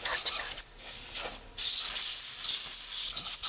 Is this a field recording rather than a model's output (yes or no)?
yes